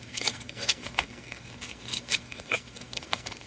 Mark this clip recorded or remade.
remade